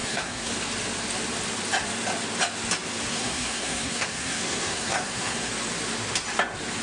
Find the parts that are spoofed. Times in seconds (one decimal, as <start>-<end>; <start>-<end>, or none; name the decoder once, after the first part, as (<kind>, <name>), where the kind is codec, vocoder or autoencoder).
0.0-0.5 (codec, SNAC); 3.1-5.5